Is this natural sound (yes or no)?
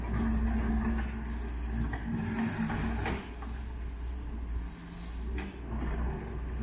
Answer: yes